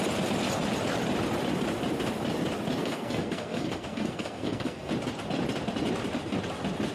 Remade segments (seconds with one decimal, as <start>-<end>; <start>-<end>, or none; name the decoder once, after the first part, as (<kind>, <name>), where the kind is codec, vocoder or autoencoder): 2.8-4.9 (codec, SNAC)